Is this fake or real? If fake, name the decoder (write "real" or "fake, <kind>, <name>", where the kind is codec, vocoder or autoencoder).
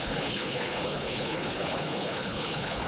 fake, codec, HILCodec